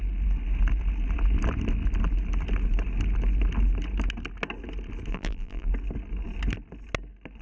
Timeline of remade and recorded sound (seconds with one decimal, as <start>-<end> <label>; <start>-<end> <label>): 0.0-5.1 recorded; 5.1-5.7 remade; 5.7-7.4 recorded